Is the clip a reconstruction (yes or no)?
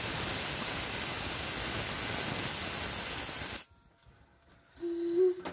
no